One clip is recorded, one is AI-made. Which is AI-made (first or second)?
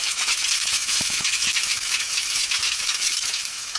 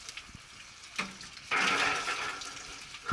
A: first